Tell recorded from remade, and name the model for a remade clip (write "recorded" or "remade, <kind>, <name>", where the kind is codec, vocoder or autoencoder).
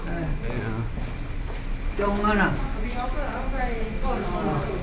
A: recorded